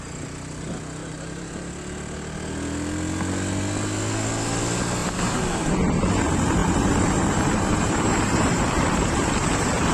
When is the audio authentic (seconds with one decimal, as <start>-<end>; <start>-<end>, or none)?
0.0-1.0; 1.7-5.0; 5.7-6.6